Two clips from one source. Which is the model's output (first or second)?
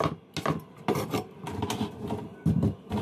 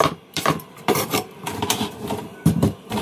second